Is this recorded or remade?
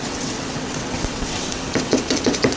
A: remade